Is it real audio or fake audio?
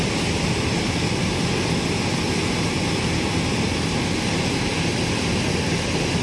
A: real